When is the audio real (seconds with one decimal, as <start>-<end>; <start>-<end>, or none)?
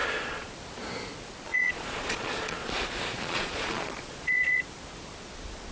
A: 0.5-1.5; 4.6-5.7